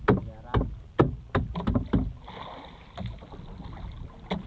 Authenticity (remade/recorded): recorded